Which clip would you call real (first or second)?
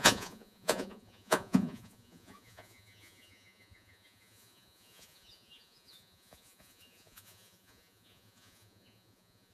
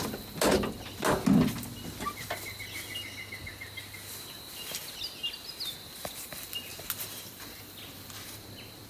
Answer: second